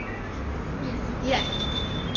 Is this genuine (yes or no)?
yes